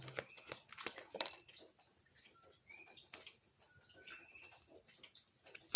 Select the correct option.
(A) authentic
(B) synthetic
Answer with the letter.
A